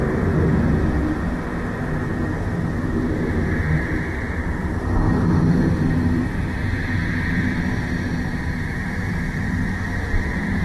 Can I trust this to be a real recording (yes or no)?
yes